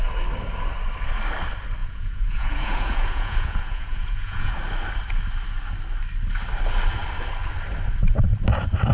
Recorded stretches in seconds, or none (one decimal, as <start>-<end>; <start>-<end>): 0.0-1.8; 4.5-8.9